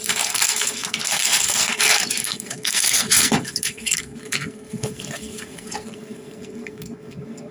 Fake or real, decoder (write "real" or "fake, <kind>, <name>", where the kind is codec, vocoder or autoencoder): fake, codec, SNAC